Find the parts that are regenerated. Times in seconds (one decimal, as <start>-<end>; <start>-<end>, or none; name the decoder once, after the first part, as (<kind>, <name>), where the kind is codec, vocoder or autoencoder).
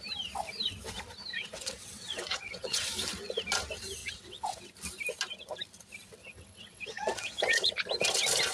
1.3-2.9 (vocoder, WaveNeXt); 4.0-4.7; 6.2-7.8